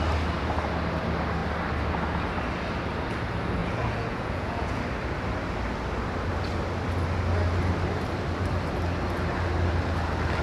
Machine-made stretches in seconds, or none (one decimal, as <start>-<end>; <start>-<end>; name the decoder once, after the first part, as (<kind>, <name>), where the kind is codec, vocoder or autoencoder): 3.6-4.8 (vocoder, Vocos)